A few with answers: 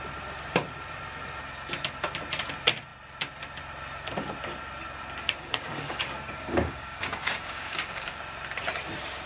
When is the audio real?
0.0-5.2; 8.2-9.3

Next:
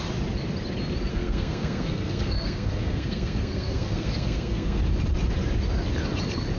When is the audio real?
0.0-1.1; 4.8-6.6